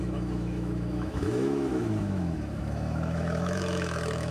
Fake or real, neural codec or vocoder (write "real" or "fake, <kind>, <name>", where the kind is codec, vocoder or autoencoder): fake, autoencoder, DAC-VAE